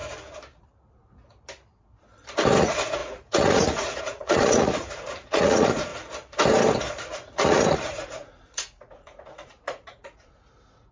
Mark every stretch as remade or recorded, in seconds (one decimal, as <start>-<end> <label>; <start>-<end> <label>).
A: 0.0-2.6 recorded; 2.6-5.9 remade; 5.9-7.1 recorded; 7.1-10.9 remade